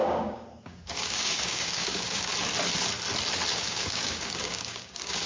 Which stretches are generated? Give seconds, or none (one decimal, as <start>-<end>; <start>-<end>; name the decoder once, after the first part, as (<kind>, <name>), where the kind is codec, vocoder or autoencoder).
0.0-2.3 (codec, DAC); 3.5-5.3